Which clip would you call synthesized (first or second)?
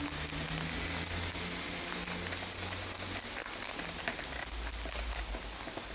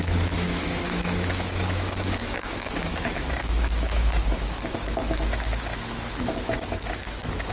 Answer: second